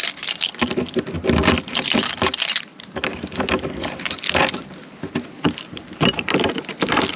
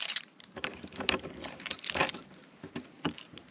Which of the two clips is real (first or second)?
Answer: first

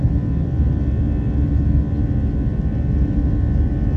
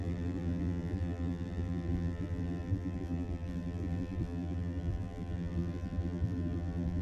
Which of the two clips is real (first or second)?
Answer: first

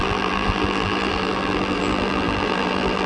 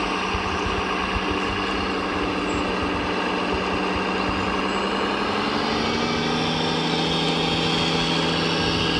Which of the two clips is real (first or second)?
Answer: second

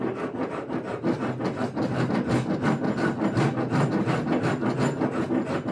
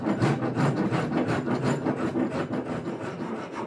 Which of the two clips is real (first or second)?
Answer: first